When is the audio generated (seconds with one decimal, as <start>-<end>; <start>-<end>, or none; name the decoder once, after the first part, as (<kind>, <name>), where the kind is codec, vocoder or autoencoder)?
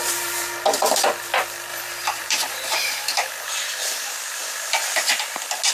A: 1.7-5.1 (vocoder, BigVGAN v2)